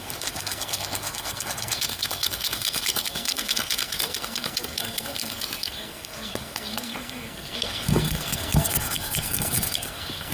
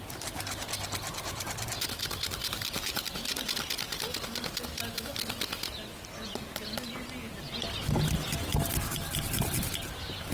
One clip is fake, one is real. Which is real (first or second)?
second